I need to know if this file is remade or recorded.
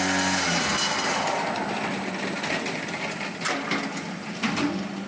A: recorded